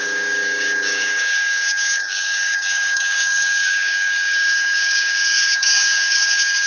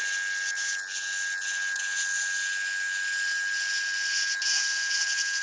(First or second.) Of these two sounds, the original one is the second